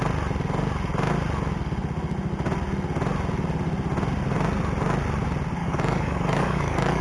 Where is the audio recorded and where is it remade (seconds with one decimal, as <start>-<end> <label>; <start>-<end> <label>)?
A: 0.0-5.6 recorded; 5.6-7.0 remade